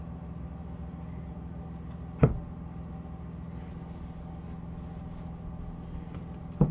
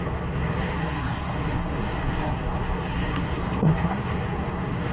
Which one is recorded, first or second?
first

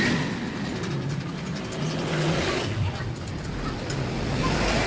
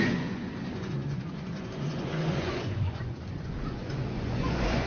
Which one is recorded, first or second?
first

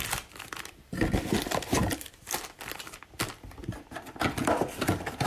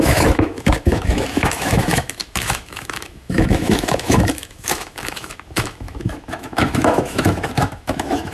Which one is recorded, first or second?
first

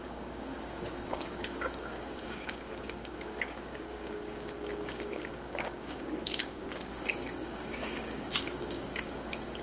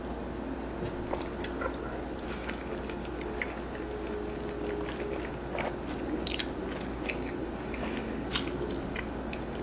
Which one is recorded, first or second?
second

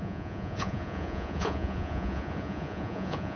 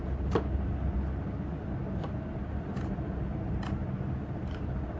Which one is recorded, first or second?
second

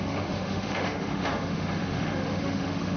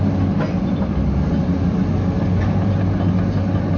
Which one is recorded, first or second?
second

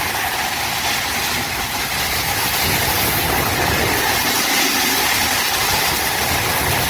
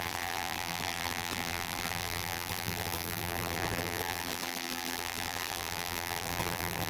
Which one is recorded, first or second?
first